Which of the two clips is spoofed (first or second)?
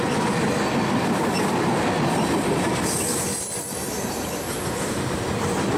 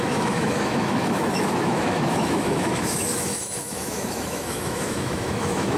second